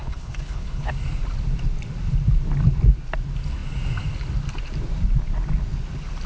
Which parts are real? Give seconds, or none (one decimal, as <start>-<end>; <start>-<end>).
0.9-6.3